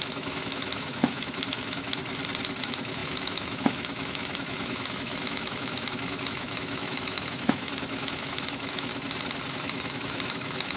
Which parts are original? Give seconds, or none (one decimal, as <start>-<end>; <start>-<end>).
2.0-2.6; 8.9-9.5